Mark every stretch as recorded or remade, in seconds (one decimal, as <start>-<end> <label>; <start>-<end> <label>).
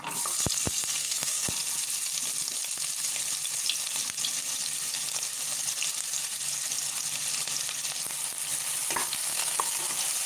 0.0-1.0 recorded; 1.0-1.5 remade; 1.5-9.3 recorded; 9.3-9.8 remade; 9.8-10.3 recorded